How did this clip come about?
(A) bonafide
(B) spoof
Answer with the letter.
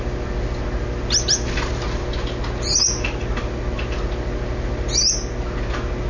A